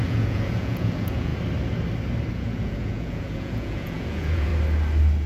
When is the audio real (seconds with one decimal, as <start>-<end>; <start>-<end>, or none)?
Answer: 1.3-2.3; 4.5-5.3